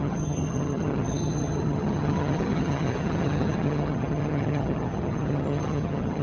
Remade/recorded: remade